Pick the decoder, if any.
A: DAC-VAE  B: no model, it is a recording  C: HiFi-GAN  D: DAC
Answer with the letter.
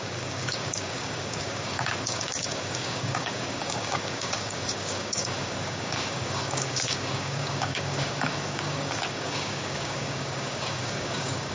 D